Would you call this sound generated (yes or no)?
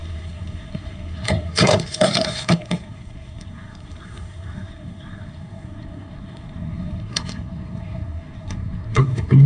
yes